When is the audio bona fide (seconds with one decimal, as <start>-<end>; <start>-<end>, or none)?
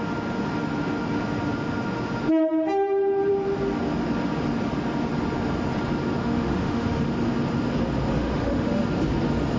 0.0-6.2; 7.1-8.1; 8.8-9.6